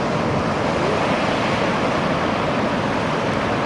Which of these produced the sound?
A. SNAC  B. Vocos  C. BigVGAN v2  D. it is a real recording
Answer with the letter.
D